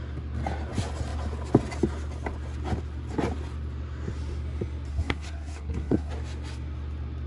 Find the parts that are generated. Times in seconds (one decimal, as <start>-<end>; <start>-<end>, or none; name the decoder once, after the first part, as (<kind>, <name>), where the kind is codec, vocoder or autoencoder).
4.9-6.1 (codec, SNAC)

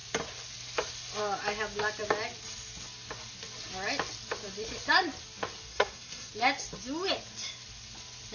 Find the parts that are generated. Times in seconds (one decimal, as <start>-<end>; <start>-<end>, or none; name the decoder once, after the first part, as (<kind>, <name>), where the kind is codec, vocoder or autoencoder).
5.7-6.3 (codec, SNAC)

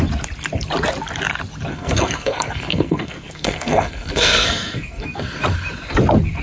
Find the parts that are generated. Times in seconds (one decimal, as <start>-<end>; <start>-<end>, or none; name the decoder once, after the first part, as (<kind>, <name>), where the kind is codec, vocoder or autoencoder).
1.7-5.2 (codec, SNAC)

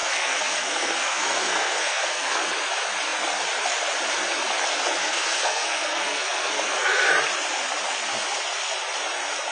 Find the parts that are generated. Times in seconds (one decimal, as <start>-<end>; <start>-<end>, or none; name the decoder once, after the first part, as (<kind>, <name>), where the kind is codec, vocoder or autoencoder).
0.0-2.4 (codec, SNAC); 5.0-7.1

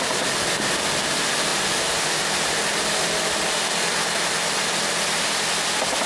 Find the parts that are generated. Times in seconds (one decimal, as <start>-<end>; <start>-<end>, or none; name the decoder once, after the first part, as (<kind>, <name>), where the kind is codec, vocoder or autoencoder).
none

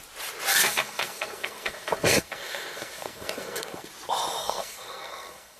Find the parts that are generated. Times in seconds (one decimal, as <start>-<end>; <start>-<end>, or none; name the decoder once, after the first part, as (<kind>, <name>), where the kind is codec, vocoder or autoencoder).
0.5-3.9 (codec, SNAC); 4.4-5.6

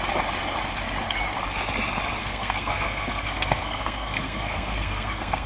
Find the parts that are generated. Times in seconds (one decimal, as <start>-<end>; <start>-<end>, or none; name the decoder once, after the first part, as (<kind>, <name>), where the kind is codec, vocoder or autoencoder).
2.2-5.5 (codec, SNAC)

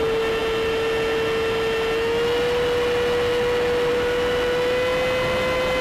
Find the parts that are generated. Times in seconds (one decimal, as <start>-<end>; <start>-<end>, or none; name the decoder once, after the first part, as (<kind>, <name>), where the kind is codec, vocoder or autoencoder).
none